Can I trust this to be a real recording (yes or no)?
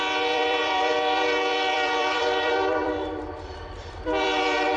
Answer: no